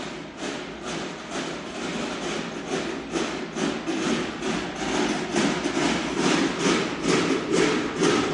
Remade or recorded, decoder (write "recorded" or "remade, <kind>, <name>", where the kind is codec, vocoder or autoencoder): recorded